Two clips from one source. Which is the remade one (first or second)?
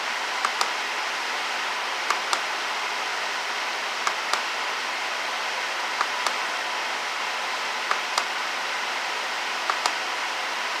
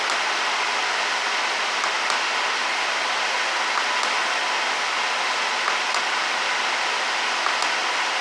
first